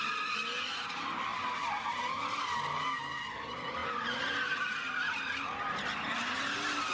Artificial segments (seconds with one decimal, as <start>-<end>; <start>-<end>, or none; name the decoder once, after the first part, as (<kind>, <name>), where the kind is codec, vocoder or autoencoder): none